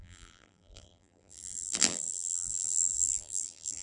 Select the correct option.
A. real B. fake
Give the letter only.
B